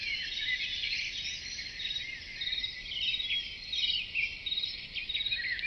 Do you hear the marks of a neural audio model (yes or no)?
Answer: no